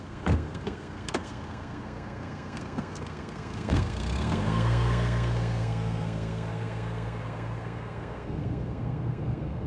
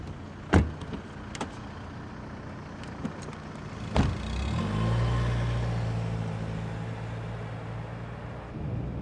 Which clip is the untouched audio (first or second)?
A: second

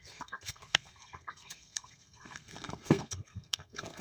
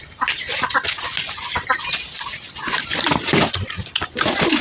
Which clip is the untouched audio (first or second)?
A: second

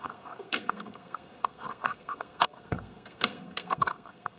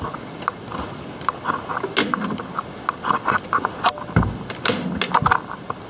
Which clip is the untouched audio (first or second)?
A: second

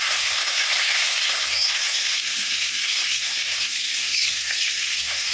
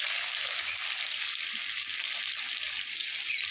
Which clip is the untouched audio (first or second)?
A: second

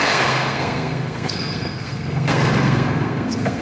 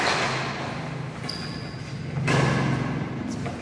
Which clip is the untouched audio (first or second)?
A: second